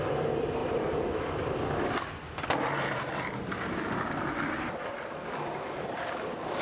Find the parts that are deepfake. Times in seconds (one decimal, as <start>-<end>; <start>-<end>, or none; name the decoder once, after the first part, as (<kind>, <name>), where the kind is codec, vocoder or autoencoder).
none